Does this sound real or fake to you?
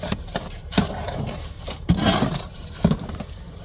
fake